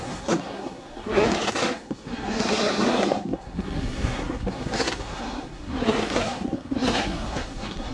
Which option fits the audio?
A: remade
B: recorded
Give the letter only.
A